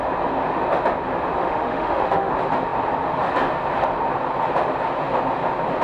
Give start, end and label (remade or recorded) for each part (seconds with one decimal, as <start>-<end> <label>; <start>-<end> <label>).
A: 0.0-1.4 recorded; 1.4-2.3 remade; 2.3-5.8 recorded